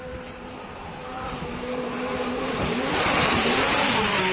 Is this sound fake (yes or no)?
yes